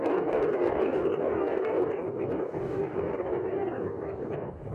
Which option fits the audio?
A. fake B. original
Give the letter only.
A